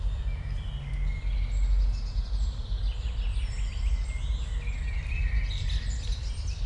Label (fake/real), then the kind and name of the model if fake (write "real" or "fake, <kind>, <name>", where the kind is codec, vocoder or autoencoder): real